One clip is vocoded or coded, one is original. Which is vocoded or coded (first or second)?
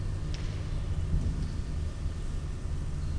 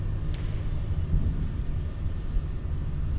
second